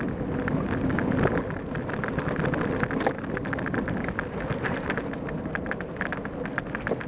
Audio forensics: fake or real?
real